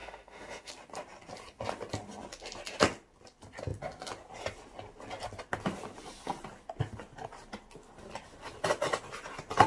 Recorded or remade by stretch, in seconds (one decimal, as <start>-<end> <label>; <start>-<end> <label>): 0.0-0.7 remade; 0.7-9.7 recorded